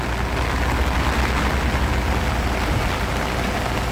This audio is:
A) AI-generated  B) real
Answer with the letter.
B